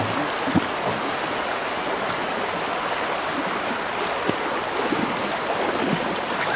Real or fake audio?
real